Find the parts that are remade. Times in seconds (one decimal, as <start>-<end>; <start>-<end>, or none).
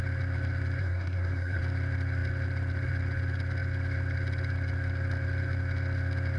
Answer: 0.8-1.6